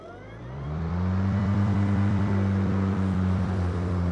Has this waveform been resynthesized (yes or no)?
yes